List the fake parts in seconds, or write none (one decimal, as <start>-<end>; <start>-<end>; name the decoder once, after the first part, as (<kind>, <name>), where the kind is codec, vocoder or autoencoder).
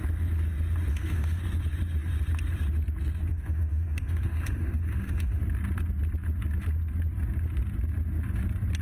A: 0.9-1.4 (autoencoder, DAC-VAE); 3.3-5.4